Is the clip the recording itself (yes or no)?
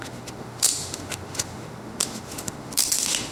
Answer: no